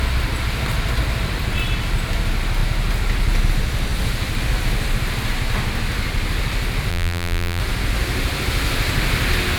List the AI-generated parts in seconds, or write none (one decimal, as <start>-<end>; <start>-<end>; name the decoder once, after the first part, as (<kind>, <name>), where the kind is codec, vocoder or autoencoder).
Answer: 6.9-7.6 (vocoder, BigVGAN v2)